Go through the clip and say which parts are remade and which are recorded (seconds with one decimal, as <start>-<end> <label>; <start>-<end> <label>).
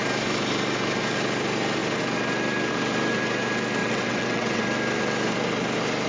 0.0-3.8 recorded; 3.8-4.6 remade; 4.6-6.1 recorded